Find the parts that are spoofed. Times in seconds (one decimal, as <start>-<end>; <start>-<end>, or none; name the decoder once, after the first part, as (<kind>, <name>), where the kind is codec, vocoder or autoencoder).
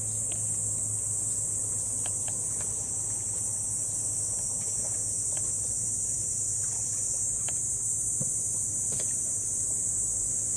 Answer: none